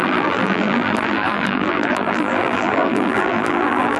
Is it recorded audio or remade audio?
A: remade